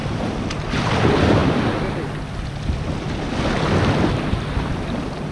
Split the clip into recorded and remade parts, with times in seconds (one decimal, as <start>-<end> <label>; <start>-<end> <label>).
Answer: 0.0-5.3 recorded